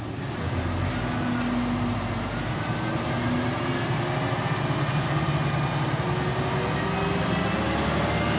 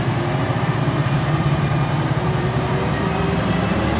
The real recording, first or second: first